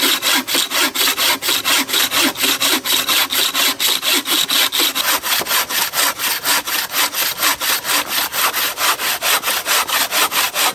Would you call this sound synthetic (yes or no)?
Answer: no